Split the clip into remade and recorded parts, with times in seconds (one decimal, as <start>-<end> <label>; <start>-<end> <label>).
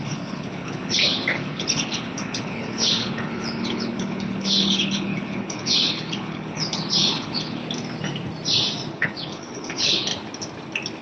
0.0-7.6 remade; 7.6-8.9 recorded; 8.9-10.1 remade; 10.1-11.0 recorded